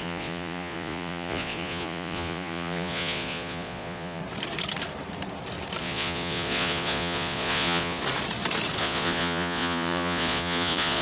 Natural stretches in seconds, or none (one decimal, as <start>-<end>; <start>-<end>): 4.2-5.8; 8.0-8.8